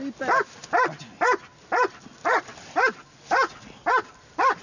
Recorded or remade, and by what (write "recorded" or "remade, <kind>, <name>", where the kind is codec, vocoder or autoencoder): recorded